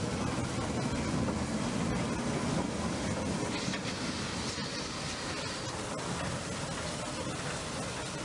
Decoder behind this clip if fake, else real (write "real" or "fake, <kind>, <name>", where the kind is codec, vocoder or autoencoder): real